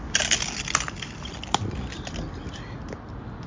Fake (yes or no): no